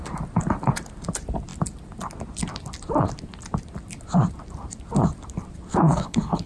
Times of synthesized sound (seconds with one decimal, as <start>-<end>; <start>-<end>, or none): 5.7-6.5